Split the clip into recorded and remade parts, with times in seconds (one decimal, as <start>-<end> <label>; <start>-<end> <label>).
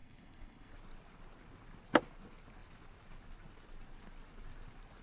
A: 0.0-0.7 remade; 0.7-5.0 recorded